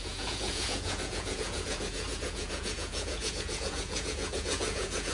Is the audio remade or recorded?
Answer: remade